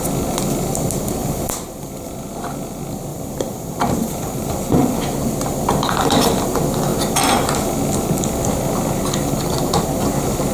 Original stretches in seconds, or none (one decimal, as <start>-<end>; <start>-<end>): 0.0-1.2; 2.1-3.1; 5.0-10.5